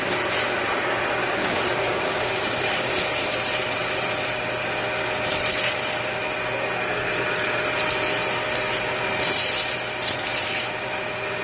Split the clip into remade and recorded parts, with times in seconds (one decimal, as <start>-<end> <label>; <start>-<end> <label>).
0.0-1.2 recorded; 1.2-2.9 remade; 2.9-11.4 recorded